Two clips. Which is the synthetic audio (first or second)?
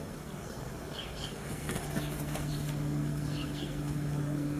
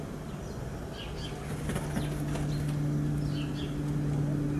first